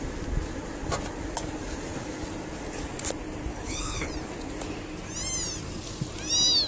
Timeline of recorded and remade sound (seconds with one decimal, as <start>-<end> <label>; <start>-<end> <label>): 0.0-3.5 recorded; 3.5-4.1 remade; 4.1-6.7 recorded